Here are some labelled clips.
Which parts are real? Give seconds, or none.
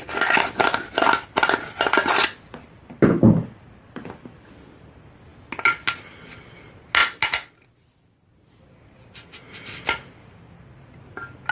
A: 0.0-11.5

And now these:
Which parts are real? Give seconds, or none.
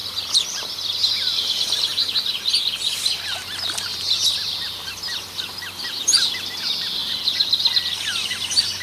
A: 0.7-8.8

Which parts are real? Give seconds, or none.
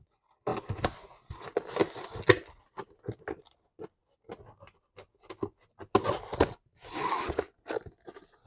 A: 0.0-8.5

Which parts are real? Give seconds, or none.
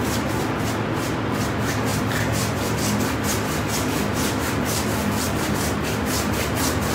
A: 0.0-1.9; 2.6-6.9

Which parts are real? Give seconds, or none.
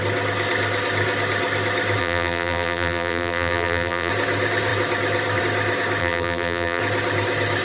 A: 0.0-2.0; 4.1-6.0; 6.8-7.6